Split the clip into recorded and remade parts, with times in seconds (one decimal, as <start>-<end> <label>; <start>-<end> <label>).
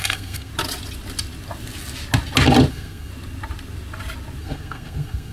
0.0-0.5 remade; 0.5-2.7 recorded; 2.7-3.1 remade; 3.1-4.4 recorded; 4.4-5.3 remade